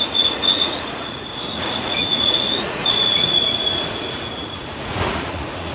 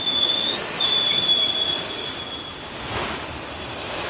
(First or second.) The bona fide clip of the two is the second